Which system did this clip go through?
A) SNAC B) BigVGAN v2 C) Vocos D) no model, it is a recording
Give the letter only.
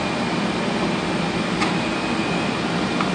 D